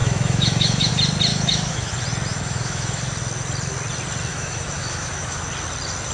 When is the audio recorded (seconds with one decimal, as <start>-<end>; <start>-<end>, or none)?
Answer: 0.9-1.3; 1.9-2.3; 3.0-4.3; 5.4-6.1